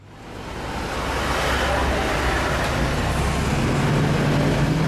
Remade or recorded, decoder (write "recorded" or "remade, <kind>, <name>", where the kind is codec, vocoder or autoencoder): recorded